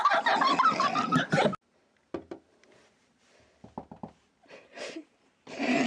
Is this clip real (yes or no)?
yes